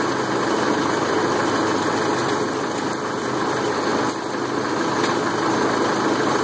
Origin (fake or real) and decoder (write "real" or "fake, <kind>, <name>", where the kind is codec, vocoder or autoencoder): real